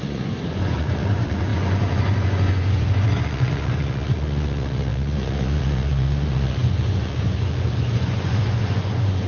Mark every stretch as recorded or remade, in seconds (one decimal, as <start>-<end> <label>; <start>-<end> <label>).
0.0-9.3 remade